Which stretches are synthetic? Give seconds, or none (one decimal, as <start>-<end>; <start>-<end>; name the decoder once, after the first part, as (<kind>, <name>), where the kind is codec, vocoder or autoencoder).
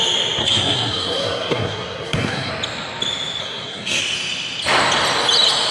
0.4-2.5 (codec, SNAC); 3.4-4.0